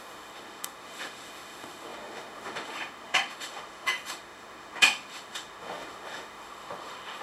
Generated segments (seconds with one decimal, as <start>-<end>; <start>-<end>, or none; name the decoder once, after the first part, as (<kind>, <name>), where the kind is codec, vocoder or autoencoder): 0.0-7.2 (autoencoder, DAC-VAE)